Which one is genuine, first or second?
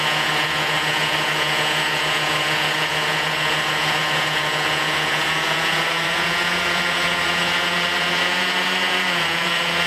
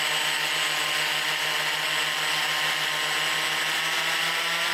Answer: second